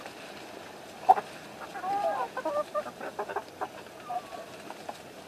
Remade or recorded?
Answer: recorded